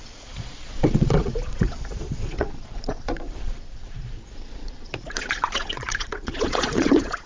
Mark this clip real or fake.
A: fake